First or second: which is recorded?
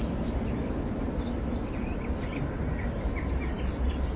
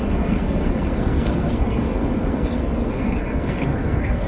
first